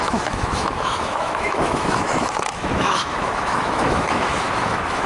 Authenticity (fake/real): fake